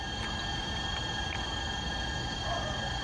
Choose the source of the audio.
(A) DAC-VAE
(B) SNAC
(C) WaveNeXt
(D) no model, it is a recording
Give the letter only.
D